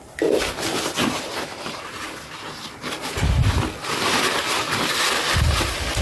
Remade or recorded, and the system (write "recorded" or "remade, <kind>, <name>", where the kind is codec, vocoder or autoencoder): recorded